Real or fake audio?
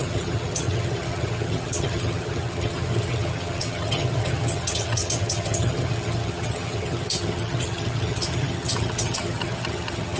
fake